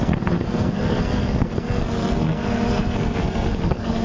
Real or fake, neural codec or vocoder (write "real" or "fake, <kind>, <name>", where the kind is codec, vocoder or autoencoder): fake, codec, SNAC